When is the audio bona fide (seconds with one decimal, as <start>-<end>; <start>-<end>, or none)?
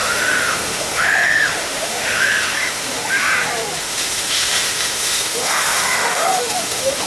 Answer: 3.3-3.8